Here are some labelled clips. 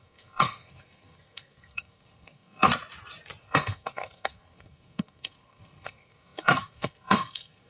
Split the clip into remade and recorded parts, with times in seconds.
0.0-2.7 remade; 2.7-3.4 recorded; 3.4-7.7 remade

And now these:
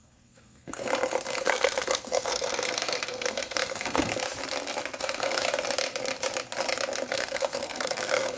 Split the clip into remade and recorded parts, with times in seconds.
0.0-0.9 remade; 0.9-1.4 recorded; 1.4-4.1 remade; 4.1-5.0 recorded; 5.0-5.4 remade; 5.4-7.1 recorded; 7.1-8.4 remade

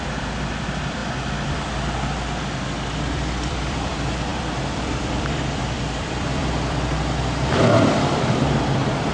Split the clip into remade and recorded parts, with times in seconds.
0.0-1.0 remade; 1.0-3.0 recorded; 3.0-9.1 remade

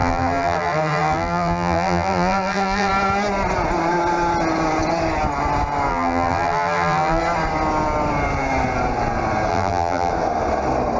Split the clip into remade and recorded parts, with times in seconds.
0.0-2.9 remade; 2.9-5.9 recorded; 5.9-7.2 remade; 7.2-9.5 recorded; 9.5-10.1 remade; 10.1-11.0 recorded

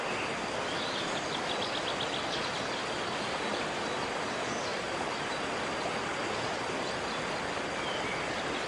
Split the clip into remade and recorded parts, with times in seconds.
0.0-4.7 recorded; 4.7-5.6 remade; 5.6-8.7 recorded